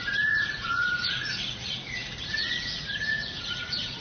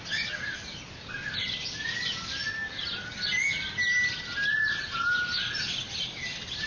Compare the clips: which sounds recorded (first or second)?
second